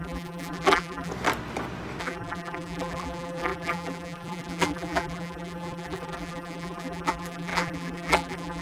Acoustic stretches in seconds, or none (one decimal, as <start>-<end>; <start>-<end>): 1.1-2.0